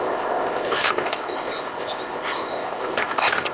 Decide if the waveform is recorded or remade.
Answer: remade